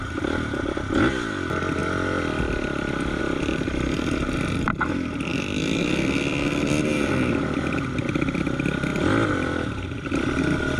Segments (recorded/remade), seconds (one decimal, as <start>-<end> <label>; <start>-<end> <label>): 0.0-8.9 recorded; 8.9-10.4 remade; 10.4-10.8 recorded